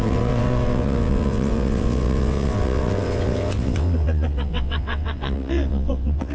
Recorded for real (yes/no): no